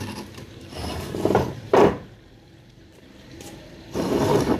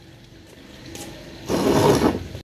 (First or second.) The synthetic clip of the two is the first